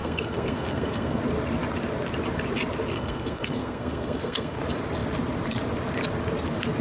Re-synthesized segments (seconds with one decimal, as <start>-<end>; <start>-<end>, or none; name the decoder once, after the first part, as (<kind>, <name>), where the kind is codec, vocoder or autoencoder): 0.0-1.2 (codec, SNAC); 2.9-4.6